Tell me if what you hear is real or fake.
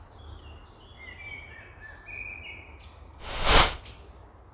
real